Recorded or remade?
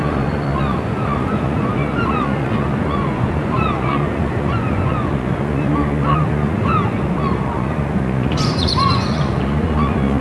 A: remade